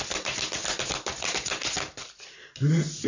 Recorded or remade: recorded